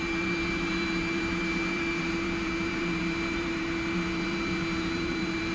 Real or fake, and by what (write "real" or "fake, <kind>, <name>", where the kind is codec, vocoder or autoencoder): fake, vocoder, BigVGAN v2